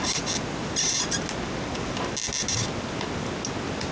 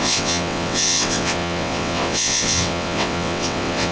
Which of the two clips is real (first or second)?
first